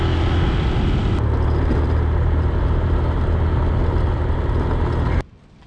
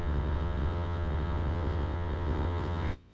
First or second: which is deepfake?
second